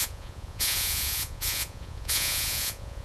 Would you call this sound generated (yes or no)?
yes